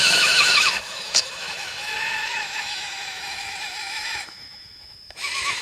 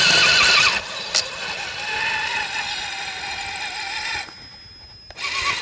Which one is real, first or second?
second